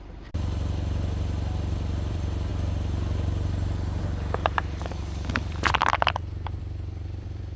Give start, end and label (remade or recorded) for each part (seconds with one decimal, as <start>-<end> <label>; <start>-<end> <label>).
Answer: 0.0-2.5 remade; 2.5-5.3 recorded; 5.3-7.6 remade